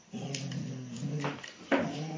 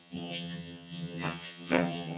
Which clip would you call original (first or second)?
first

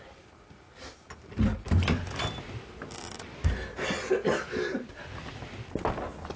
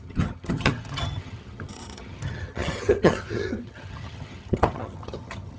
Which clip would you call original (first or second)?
first